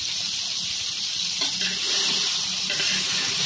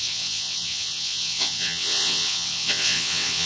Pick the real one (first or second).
first